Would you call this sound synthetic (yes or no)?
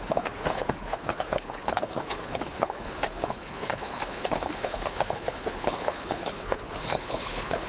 yes